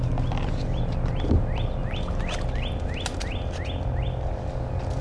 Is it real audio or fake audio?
real